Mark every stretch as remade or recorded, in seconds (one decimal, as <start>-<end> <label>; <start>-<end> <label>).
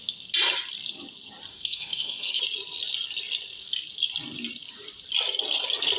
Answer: 0.0-1.5 recorded; 1.5-2.4 remade; 2.4-6.0 recorded